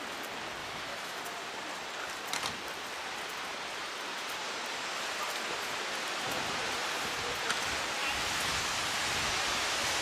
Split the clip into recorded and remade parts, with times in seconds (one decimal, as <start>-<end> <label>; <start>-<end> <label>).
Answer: 0.0-0.6 recorded; 0.6-1.2 remade; 1.2-10.0 recorded